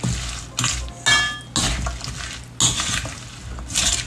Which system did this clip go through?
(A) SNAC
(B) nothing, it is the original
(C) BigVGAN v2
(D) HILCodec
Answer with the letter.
B